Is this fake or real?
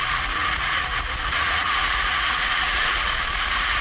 fake